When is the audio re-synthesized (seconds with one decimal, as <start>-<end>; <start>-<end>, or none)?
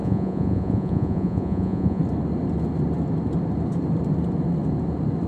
0.0-2.0